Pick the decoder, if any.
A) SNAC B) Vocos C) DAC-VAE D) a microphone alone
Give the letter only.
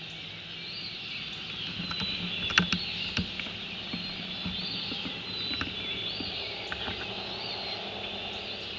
D